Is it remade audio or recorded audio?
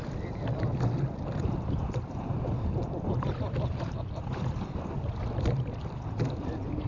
recorded